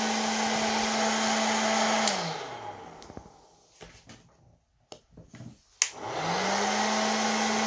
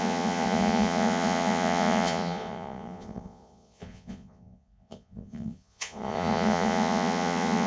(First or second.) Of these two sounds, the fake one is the second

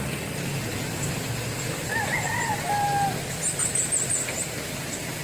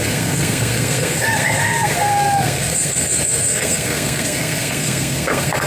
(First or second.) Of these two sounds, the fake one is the second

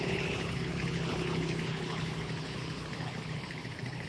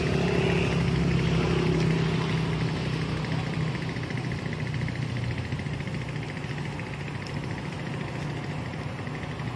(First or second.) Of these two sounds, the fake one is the first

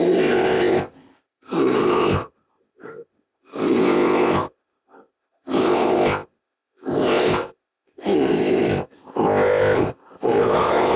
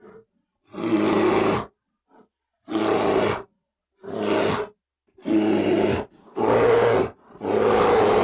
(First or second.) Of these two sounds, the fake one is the first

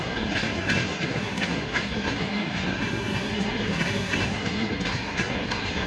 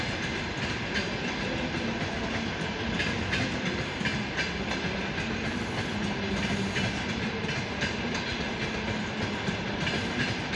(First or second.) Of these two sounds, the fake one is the first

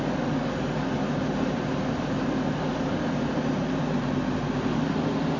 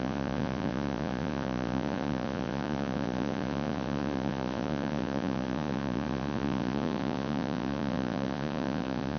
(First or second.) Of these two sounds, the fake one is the second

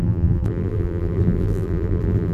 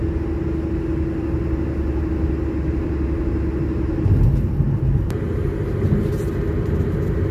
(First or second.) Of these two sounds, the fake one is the first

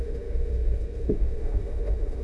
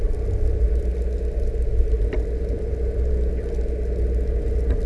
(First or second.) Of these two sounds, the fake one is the first